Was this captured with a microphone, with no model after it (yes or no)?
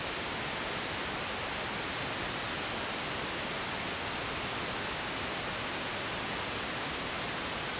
yes